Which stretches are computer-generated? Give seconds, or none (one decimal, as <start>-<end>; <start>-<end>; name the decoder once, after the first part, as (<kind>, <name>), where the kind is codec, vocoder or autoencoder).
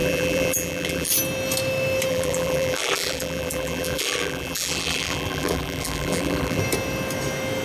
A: 0.0-1.1 (vocoder, BigVGAN v2); 2.1-6.6